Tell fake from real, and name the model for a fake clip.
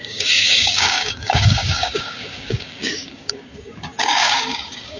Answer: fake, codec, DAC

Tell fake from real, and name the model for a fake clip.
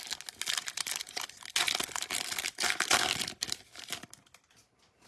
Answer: real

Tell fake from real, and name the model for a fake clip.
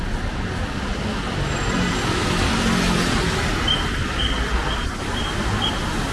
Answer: real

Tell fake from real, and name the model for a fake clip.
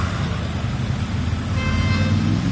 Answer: real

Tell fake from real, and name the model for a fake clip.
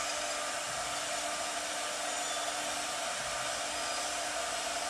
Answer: real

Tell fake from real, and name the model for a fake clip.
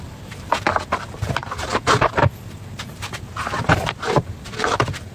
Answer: fake, vocoder, BigVGAN v2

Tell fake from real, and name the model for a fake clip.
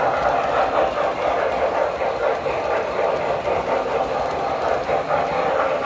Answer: real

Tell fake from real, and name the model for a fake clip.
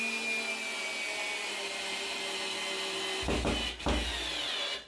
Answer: real